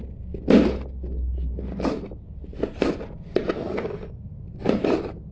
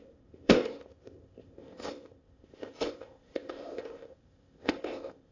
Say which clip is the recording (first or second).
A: first